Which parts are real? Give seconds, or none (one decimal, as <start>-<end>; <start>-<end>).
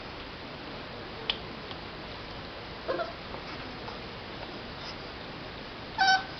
0.0-6.4